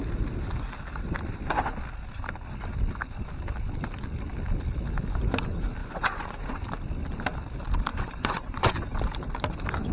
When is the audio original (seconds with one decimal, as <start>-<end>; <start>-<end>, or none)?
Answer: 0.0-5.8; 6.6-7.9; 8.7-9.9